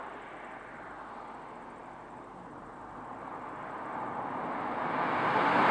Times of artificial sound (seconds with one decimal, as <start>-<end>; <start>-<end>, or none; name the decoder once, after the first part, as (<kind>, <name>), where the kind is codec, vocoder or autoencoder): none